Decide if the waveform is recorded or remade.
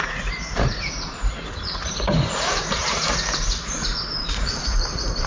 remade